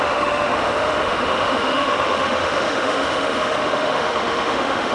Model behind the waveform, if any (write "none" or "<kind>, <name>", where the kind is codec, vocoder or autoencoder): autoencoder, DAC-VAE